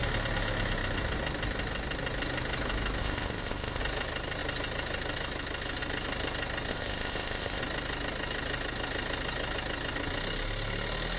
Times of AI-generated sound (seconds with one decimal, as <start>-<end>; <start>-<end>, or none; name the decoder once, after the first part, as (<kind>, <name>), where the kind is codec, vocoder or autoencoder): 3.0-3.8 (codec, ZipCodec); 6.7-7.6